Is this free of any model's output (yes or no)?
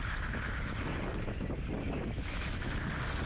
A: yes